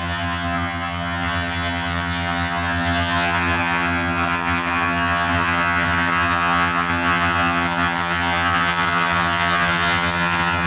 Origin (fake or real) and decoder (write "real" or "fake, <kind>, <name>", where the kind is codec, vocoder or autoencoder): fake, vocoder, HiFi-GAN